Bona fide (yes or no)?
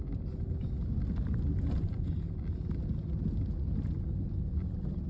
yes